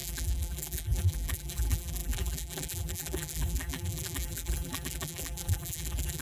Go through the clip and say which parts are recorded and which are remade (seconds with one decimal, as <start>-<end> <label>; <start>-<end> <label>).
0.0-6.2 remade